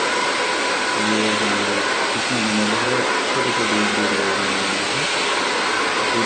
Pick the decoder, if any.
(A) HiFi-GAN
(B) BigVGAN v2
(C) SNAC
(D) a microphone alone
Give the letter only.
D